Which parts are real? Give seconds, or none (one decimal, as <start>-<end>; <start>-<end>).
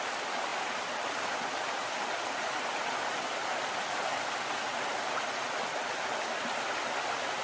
0.0-7.4